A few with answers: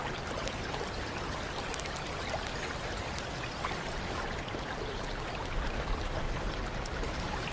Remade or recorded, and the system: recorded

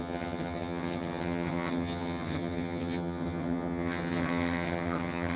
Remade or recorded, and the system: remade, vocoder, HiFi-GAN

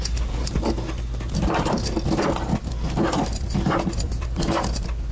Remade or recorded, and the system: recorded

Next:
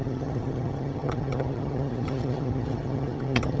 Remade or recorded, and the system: remade, vocoder, HiFi-GAN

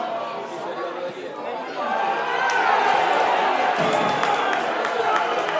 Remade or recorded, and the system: recorded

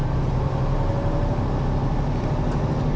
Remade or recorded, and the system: recorded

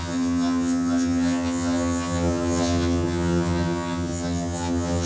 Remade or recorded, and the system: remade, vocoder, HiFi-GAN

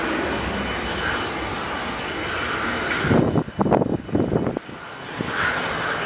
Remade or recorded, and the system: recorded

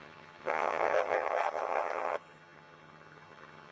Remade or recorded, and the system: remade, vocoder, HiFi-GAN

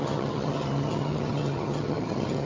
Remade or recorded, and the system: remade, vocoder, HiFi-GAN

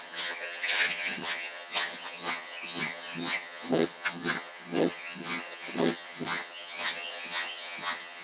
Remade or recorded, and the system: remade, vocoder, HiFi-GAN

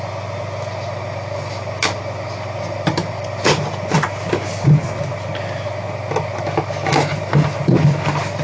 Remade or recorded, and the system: recorded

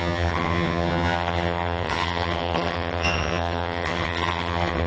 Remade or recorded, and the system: remade, vocoder, HiFi-GAN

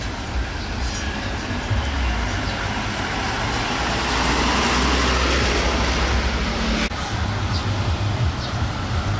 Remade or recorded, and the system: recorded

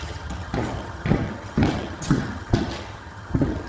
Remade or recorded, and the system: remade, vocoder, HiFi-GAN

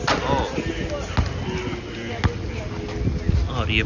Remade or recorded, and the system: recorded